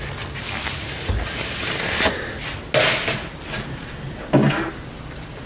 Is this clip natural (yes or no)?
yes